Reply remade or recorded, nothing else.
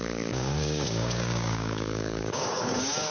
remade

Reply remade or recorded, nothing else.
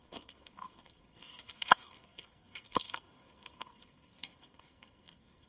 remade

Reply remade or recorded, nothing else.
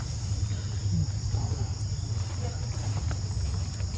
recorded